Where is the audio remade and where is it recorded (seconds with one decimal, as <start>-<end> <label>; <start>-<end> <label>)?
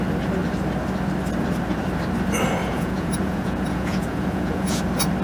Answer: 0.0-2.6 recorded; 2.6-4.8 remade; 4.8-5.2 recorded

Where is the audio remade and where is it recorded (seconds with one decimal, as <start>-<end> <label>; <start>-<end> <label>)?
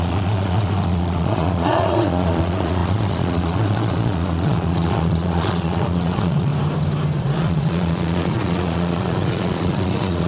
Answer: 0.0-6.5 remade; 6.5-7.2 recorded; 7.2-10.3 remade